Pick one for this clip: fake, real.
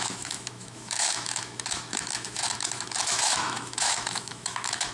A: fake